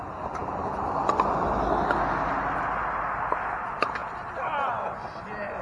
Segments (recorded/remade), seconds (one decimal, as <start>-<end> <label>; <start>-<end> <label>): 0.0-5.6 recorded